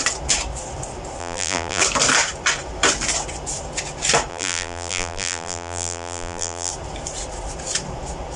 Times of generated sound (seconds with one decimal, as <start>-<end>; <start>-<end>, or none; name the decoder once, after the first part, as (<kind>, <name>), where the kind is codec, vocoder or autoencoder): 1.2-1.8 (vocoder, BigVGAN v2); 4.3-6.7